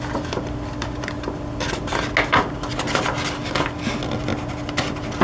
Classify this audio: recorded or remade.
recorded